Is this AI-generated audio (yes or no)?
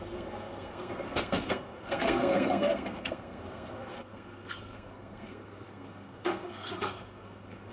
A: yes